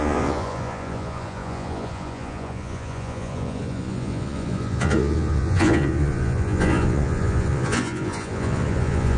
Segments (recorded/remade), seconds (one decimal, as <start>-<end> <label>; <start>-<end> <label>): 0.0-9.2 remade

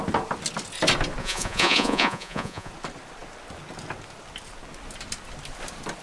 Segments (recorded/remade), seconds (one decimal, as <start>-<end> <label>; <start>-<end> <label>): 0.0-1.2 recorded; 1.2-2.7 remade; 2.7-6.0 recorded

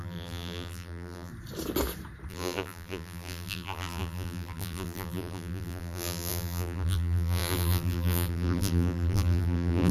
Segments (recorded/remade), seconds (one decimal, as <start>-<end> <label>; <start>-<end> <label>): 0.0-1.3 remade; 1.3-2.3 recorded; 2.3-9.9 remade

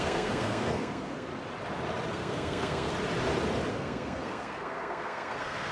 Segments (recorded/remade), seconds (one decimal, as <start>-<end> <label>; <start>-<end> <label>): 0.0-1.3 remade; 1.3-2.1 recorded; 2.1-2.9 remade; 2.9-3.7 recorded; 3.7-5.7 remade

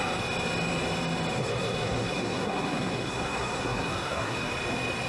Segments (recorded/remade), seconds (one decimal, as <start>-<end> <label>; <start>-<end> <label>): 0.0-1.4 recorded; 1.4-4.5 remade; 4.5-5.1 recorded

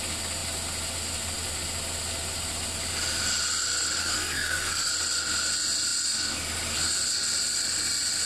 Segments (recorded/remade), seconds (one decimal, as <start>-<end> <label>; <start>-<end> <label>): 0.0-4.0 recorded; 4.0-4.9 remade; 4.9-8.3 recorded

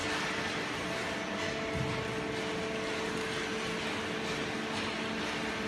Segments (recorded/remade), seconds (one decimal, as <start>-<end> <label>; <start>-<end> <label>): 0.0-5.7 recorded